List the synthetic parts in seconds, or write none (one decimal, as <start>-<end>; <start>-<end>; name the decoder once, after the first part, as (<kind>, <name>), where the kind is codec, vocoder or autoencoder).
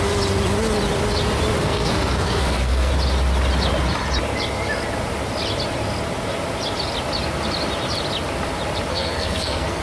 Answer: 1.6-2.9 (codec, SNAC); 8.9-9.8